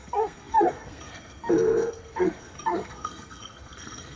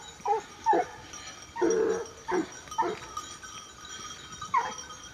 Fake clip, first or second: first